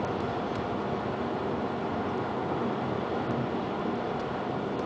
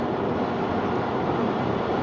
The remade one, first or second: second